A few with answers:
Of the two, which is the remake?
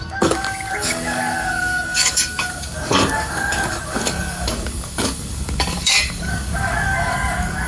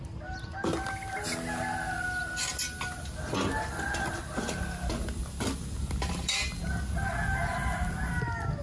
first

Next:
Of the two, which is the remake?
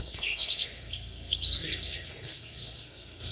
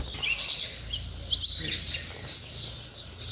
first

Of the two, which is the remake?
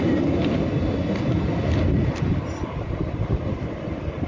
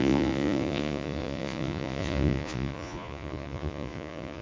second